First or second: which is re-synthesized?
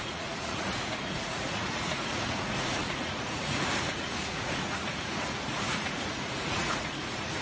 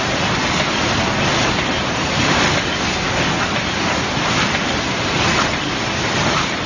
first